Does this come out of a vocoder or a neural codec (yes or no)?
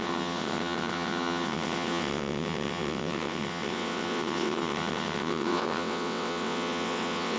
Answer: yes